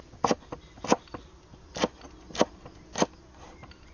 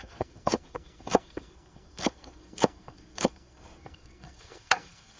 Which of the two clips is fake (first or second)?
second